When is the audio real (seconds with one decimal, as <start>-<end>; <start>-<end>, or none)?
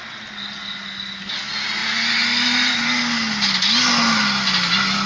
0.0-5.1